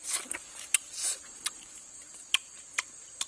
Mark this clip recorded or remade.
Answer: remade